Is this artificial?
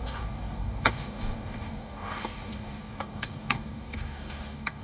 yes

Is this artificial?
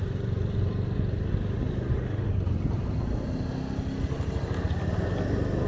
no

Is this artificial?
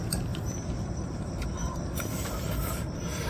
yes